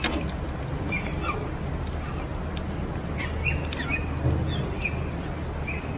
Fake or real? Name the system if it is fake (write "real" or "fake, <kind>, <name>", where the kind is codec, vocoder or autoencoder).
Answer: real